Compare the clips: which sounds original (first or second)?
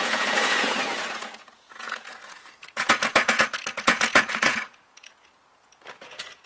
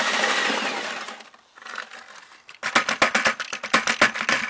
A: second